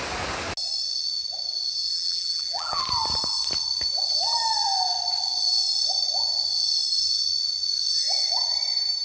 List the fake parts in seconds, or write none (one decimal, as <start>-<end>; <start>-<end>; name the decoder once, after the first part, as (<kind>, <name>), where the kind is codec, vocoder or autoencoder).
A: 1.9-2.8 (vocoder, BigVGAN v2)